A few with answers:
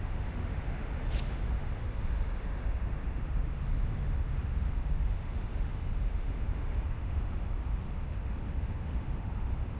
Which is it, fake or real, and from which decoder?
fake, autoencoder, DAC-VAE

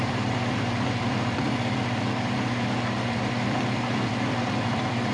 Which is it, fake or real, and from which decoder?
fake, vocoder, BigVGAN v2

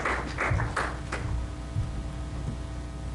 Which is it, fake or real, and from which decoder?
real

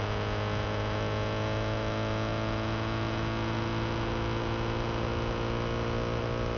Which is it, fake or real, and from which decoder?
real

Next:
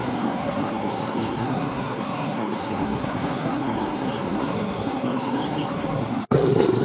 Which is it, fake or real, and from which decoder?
fake, codec, SNAC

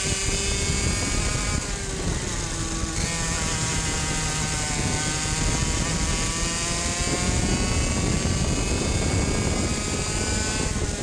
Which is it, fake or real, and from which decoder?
real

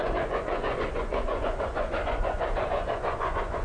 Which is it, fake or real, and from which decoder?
fake, vocoder, Vocos